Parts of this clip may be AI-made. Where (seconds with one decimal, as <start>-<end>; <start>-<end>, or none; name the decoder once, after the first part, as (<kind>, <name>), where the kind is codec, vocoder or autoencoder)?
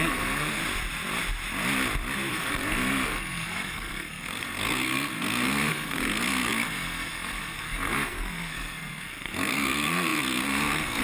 0.0-0.6 (codec, SNAC); 2.3-11.0